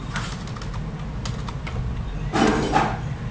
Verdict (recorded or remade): recorded